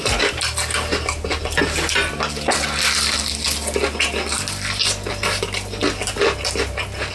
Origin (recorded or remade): recorded